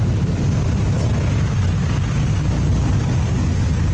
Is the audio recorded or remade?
recorded